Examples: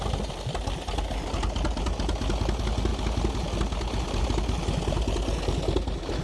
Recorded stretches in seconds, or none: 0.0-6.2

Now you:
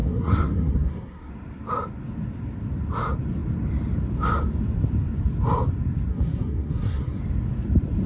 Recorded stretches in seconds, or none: 1.3-6.1; 7.2-8.1

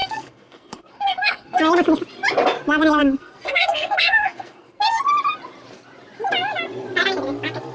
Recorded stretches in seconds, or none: 1.6-3.0; 5.0-7.7

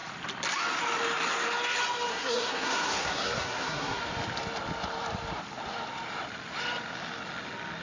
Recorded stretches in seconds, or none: 0.0-2.1; 4.0-7.8

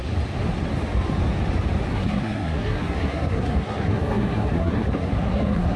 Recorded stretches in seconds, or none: 0.0-1.9

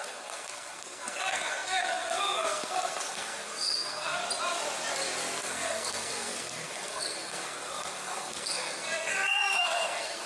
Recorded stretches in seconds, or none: 4.2-5.4

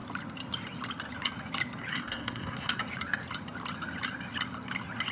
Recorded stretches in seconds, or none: 0.0-1.9; 2.8-5.1